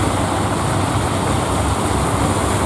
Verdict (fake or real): real